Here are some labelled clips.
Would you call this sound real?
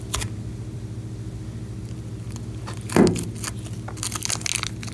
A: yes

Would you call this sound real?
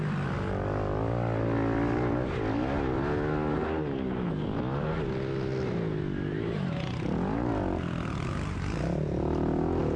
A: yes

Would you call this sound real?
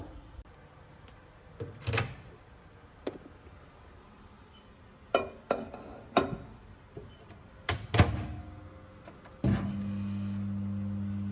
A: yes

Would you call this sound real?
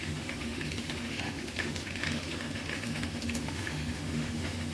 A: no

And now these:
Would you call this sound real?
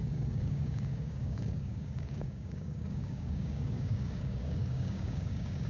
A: no